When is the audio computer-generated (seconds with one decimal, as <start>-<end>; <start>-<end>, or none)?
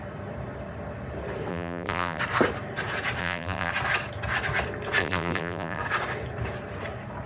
1.5-2.2; 3.2-3.7; 5.0-5.8